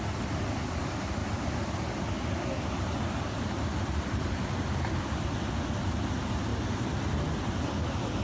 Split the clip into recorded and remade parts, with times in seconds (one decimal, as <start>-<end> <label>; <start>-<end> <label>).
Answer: 0.0-8.2 recorded